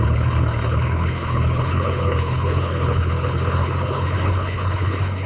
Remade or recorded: remade